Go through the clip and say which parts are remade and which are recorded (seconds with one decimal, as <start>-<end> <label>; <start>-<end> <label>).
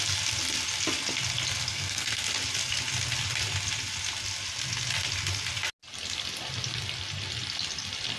0.0-1.7 recorded; 1.7-2.2 remade; 2.2-8.2 recorded